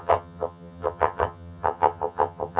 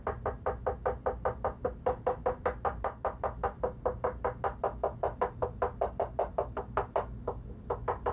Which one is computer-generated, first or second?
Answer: first